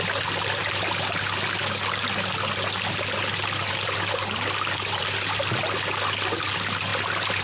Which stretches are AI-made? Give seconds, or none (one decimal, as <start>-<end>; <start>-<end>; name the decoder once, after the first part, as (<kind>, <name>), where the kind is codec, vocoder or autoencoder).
none